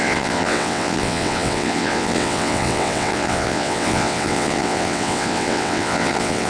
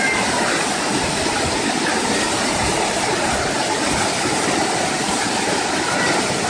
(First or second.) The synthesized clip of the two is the first